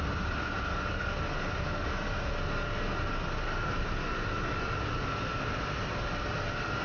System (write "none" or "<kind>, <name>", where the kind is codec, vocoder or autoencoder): none